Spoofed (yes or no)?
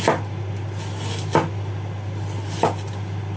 no